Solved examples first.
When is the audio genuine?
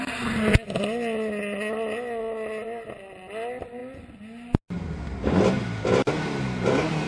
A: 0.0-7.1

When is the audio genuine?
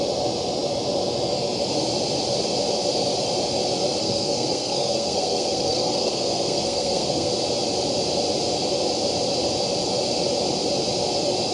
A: 0.0-4.0; 7.3-11.5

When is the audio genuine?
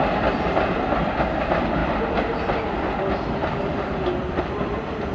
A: 0.0-5.1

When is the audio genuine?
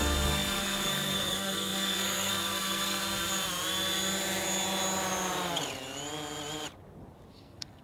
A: 3.0-7.3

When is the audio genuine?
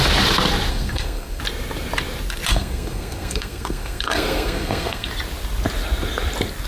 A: 0.0-0.7; 1.4-2.5; 5.1-6.7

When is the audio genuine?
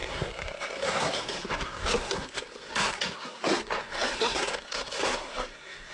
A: none